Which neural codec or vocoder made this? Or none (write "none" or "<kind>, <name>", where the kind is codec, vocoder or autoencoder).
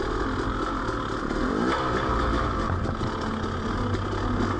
none